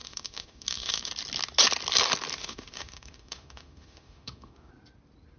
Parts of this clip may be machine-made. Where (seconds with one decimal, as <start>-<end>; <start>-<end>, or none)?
0.0-1.1; 2.4-4.7